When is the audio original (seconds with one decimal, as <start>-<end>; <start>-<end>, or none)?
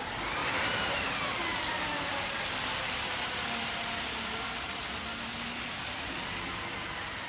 0.0-0.4; 1.1-7.3